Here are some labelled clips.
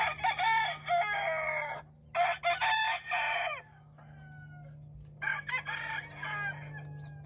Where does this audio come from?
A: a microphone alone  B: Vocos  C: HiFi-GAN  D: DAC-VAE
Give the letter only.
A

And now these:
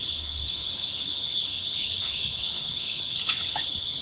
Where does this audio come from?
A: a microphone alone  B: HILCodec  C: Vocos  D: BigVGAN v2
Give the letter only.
B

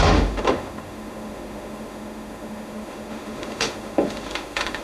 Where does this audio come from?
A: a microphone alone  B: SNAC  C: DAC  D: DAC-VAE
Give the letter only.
D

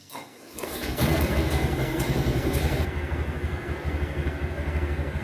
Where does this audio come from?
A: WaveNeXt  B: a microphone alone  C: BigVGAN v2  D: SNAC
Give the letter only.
D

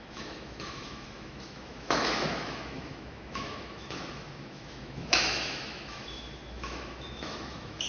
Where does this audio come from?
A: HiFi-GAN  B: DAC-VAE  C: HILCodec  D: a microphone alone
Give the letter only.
B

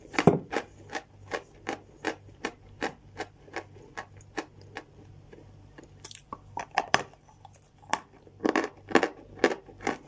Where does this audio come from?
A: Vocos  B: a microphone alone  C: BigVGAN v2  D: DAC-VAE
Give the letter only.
C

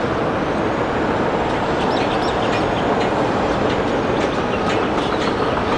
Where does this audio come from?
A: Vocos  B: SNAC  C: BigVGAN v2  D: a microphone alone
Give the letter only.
D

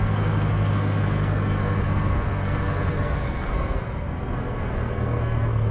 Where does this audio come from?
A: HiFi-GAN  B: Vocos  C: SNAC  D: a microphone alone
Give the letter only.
C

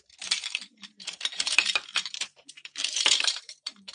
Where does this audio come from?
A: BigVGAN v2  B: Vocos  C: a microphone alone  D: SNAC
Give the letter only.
A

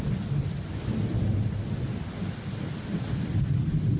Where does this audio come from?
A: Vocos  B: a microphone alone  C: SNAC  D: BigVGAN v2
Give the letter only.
B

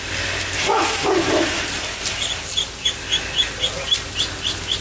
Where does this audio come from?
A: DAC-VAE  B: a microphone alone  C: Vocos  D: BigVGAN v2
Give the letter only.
B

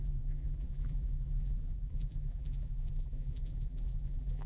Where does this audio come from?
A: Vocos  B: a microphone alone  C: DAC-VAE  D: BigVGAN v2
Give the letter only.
D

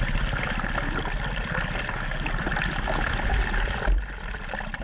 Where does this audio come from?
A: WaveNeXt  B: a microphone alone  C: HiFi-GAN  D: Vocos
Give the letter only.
B